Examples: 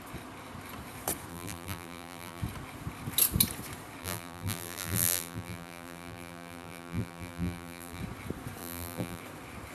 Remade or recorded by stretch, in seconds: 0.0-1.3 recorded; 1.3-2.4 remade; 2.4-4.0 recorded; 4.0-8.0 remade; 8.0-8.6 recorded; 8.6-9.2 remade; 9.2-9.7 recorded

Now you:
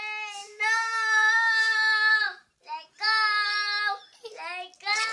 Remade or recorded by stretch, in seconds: 0.0-0.4 recorded; 0.4-2.8 remade; 2.8-5.1 recorded